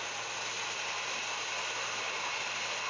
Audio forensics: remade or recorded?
recorded